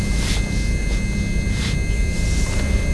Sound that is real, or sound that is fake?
real